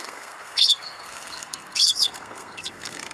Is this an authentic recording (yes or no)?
no